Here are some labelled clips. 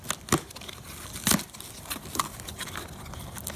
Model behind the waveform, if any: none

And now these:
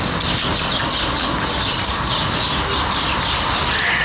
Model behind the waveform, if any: none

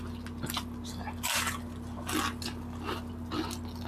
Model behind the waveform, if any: none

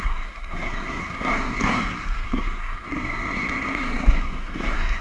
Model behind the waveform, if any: codec, SNAC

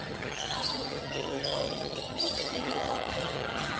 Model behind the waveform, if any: vocoder, HiFi-GAN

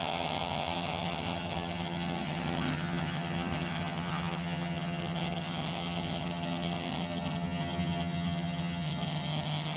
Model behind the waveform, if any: vocoder, HiFi-GAN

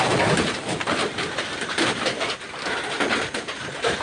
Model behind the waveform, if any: none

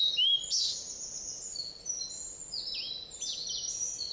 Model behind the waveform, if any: none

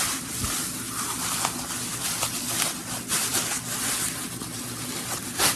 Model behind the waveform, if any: none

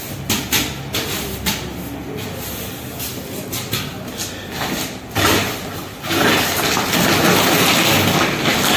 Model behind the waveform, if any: none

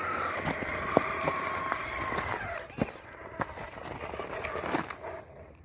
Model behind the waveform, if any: none